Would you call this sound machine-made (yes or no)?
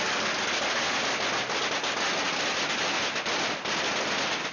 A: no